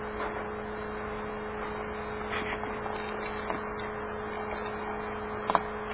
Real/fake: real